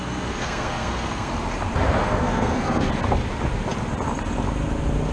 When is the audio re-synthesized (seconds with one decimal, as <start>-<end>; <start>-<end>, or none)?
0.0-1.3; 2.0-2.9